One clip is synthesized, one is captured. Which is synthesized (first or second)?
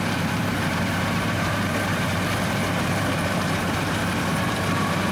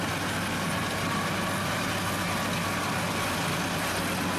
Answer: first